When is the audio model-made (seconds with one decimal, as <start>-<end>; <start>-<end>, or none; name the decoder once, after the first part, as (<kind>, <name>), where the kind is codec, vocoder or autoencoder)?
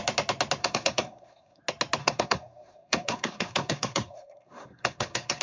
0.6-1.6 (codec, SNAC); 2.0-5.4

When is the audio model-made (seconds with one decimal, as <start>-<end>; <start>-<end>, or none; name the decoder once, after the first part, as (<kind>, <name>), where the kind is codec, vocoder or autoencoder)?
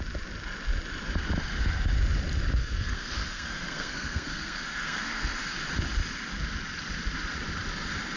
2.6-5.6 (codec, SNAC)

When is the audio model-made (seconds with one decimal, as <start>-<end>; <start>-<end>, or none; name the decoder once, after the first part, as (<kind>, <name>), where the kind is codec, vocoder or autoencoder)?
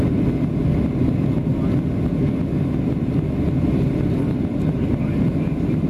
none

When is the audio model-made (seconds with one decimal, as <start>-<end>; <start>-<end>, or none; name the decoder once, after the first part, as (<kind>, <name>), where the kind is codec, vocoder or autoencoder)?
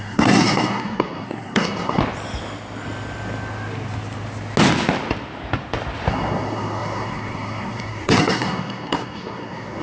0.0-2.0 (codec, SNAC); 6.1-9.8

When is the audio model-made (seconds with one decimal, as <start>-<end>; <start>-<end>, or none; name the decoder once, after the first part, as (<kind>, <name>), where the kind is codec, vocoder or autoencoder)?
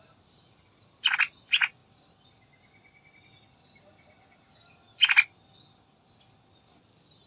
none